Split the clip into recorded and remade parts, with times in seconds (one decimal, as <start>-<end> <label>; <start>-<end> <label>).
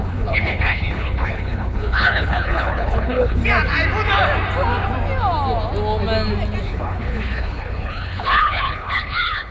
0.0-3.4 remade; 3.4-6.6 recorded; 6.6-9.5 remade